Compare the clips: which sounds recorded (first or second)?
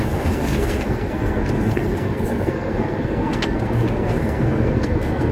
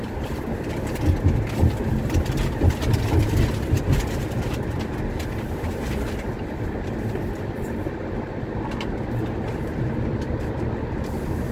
second